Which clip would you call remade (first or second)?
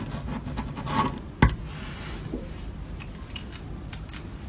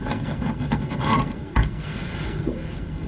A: second